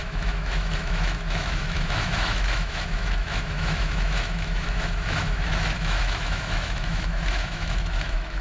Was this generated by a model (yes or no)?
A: yes